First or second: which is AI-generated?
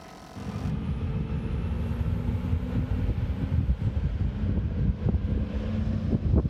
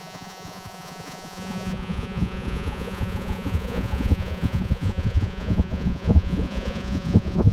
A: second